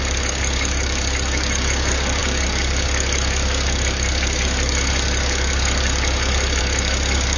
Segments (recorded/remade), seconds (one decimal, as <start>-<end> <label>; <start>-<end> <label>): 0.0-7.4 remade